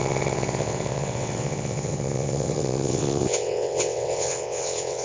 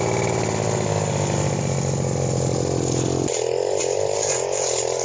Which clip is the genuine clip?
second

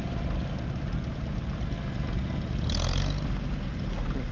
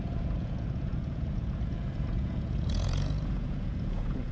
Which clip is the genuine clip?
first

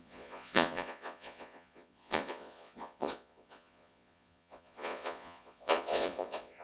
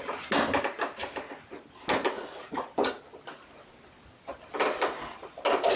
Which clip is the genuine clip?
second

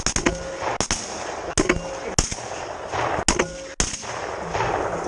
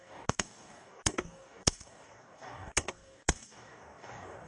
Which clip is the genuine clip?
first